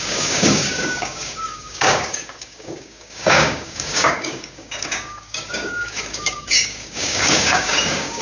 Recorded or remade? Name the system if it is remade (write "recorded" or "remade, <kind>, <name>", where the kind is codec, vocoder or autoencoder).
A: remade, codec, DAC